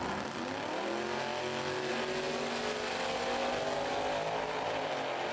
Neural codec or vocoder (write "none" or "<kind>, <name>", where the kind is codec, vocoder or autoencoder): none